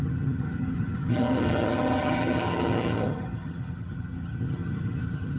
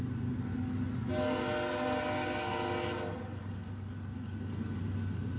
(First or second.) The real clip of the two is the second